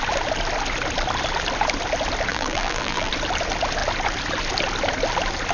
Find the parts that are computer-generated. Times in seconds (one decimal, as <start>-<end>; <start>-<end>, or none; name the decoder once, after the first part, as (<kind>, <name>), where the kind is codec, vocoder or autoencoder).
2.3-3.1 (vocoder, BigVGAN v2)